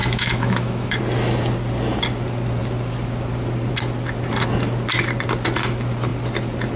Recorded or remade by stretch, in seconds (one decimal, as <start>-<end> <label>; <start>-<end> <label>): 0.0-1.0 remade; 1.0-6.8 recorded